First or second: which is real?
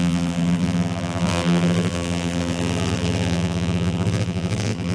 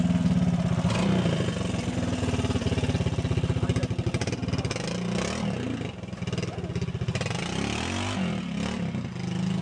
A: second